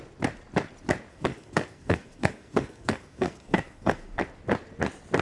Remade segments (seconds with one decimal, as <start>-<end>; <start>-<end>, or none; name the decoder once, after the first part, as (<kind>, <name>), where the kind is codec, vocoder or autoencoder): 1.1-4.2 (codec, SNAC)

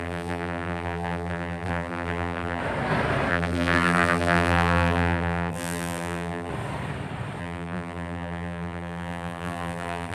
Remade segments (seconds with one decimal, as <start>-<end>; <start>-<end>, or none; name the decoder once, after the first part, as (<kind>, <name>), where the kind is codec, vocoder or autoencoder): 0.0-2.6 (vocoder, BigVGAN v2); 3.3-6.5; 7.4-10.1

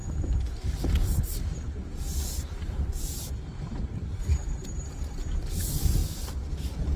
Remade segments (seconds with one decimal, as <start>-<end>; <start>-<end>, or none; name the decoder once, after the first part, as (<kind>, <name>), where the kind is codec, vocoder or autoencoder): 0.0-7.0 (vocoder, BigVGAN v2)

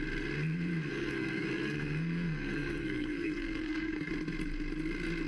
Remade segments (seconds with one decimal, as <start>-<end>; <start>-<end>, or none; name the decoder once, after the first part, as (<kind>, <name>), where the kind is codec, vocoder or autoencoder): 0.9-4.1 (codec, SNAC)

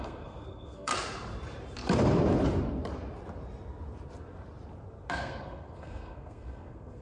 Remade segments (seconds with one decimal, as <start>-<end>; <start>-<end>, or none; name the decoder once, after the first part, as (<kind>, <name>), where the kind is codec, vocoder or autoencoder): 0.0-0.9 (codec, SNAC); 5.1-7.0